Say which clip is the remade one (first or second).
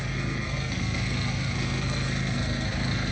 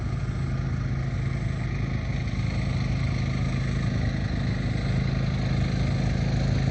first